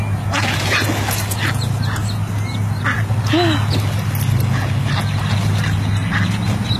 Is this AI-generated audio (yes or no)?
no